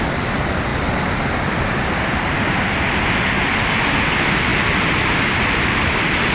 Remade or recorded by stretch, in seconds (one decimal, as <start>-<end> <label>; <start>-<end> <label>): 0.0-6.3 recorded